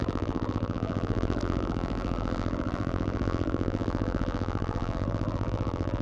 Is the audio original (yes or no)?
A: no